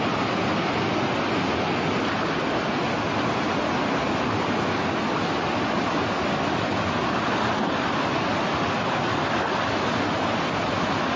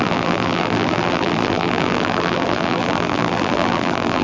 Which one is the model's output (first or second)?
second